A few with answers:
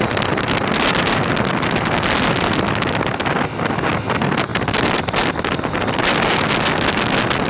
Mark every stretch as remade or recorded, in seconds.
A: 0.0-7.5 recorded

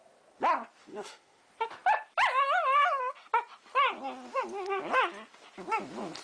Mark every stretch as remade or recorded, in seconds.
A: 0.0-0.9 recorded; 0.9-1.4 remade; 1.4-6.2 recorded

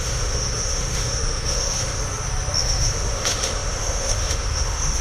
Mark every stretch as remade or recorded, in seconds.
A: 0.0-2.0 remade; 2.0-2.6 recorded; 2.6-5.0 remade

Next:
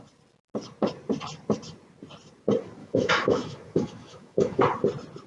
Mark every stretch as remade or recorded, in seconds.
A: 0.0-2.8 recorded; 2.8-4.6 remade; 4.6-5.3 recorded

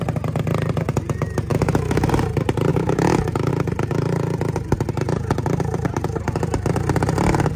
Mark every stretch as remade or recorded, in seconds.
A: 0.0-1.5 recorded; 1.5-2.1 remade; 2.1-2.7 recorded; 2.7-3.5 remade; 3.5-7.6 recorded